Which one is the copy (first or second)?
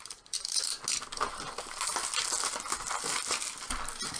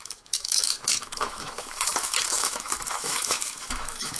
second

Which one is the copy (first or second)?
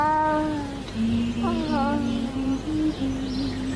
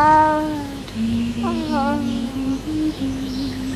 second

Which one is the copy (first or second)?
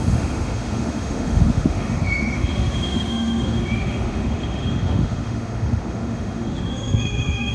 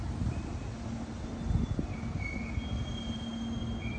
first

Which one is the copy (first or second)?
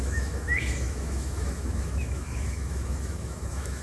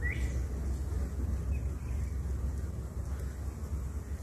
first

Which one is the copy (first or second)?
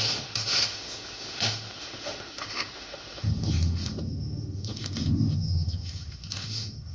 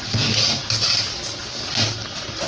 first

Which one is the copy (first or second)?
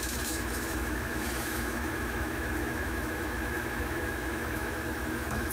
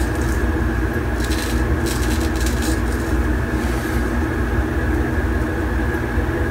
first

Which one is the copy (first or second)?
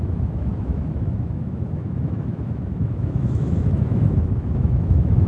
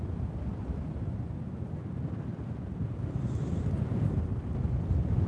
first